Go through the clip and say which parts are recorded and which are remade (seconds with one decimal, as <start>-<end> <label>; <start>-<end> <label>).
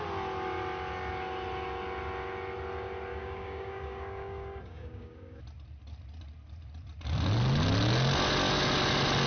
0.0-3.1 recorded; 3.1-5.4 remade; 5.4-9.3 recorded